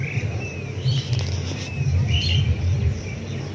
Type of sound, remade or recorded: recorded